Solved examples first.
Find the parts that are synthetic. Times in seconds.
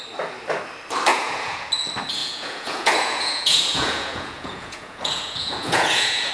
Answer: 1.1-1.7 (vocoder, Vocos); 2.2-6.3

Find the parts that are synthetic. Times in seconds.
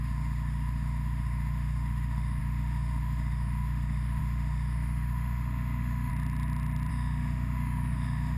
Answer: 0.0-6.1 (autoencoder, DAC-VAE); 6.9-8.4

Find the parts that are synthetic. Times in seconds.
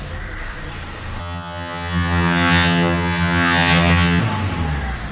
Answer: 1.2-4.2 (vocoder, HiFi-GAN)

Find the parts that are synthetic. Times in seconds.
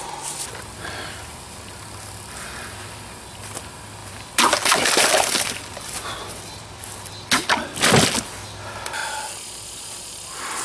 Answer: 4.0-7.1 (vocoder, BigVGAN v2); 9.0-10.1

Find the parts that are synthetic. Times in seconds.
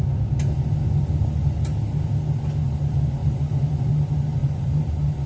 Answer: 4.4-5.3 (vocoder, BigVGAN v2)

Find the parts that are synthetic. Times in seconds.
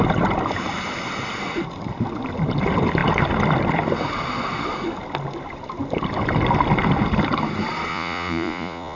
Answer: 7.9-9.0 (vocoder, Vocos)